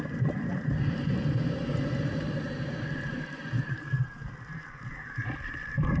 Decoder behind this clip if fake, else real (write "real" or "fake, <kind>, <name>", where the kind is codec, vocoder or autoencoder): fake, vocoder, BigVGAN v2